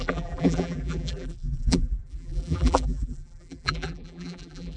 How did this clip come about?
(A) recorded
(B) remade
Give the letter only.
B